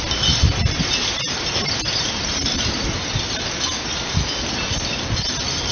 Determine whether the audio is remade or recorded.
recorded